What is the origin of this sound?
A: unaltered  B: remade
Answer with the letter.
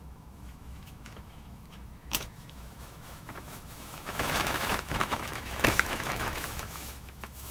B